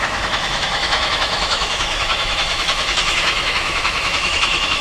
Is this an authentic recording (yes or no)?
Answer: no